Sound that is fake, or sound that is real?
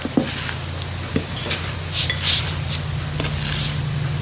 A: real